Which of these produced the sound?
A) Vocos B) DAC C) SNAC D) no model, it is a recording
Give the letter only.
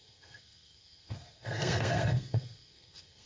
C